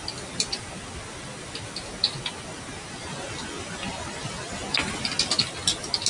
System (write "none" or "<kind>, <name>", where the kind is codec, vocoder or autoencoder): none